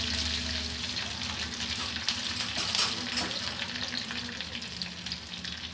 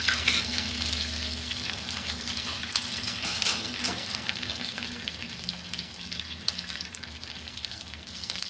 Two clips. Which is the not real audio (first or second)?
second